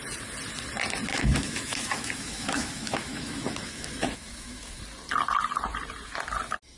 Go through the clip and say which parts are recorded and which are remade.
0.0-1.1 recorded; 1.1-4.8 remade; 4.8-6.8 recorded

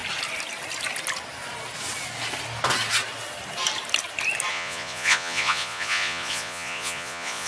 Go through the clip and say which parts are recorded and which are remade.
0.0-4.5 recorded; 4.5-7.5 remade

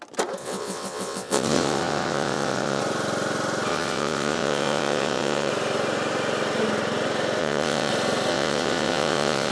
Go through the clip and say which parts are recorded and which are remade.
0.0-0.4 recorded; 0.4-2.8 remade; 2.8-3.7 recorded; 3.7-5.5 remade; 5.5-7.4 recorded; 7.4-7.9 remade; 7.9-8.3 recorded; 8.3-9.5 remade

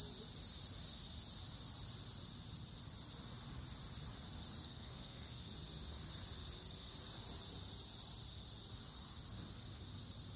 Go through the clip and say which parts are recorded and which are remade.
0.0-4.6 recorded; 4.6-5.5 remade; 5.5-10.4 recorded

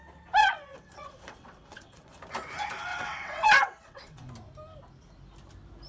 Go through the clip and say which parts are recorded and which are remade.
0.0-0.4 recorded; 0.4-2.2 remade; 2.2-2.9 recorded; 2.9-4.3 remade; 4.3-5.9 recorded

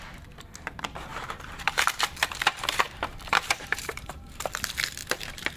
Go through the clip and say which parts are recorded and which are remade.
0.0-1.1 recorded; 1.1-4.5 remade; 4.5-5.0 recorded; 5.0-5.6 remade